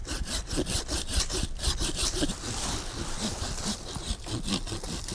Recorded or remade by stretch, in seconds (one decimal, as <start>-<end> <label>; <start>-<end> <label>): 0.0-5.1 recorded